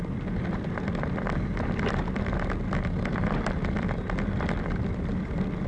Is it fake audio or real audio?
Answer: real